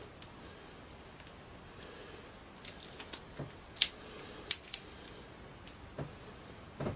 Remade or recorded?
recorded